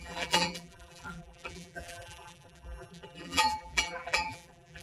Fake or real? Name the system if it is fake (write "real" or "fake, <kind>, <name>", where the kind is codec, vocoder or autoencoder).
fake, vocoder, BigVGAN v2